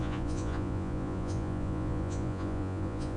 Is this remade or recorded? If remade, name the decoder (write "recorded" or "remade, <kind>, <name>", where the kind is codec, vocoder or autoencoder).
remade, vocoder, Vocos